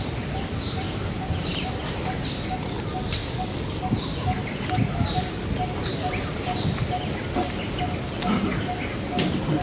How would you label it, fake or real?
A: real